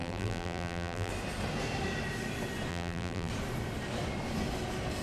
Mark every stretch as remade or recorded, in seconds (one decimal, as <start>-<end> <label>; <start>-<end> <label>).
0.0-1.1 remade; 1.1-2.7 recorded; 2.7-3.3 remade; 3.3-5.0 recorded